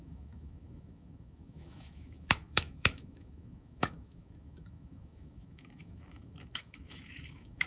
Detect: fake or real fake